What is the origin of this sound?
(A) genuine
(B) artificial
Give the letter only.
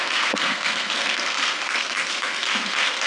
B